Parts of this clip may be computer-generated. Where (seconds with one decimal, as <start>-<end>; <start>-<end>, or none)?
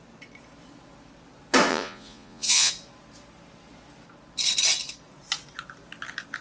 1.7-2.7